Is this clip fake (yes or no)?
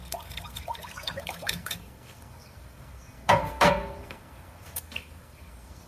yes